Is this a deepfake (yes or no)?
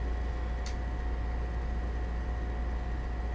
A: no